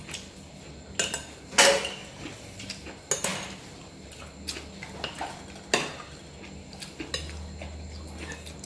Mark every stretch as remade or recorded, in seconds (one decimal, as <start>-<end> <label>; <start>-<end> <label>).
0.0-2.0 recorded; 2.0-2.7 remade; 2.7-8.7 recorded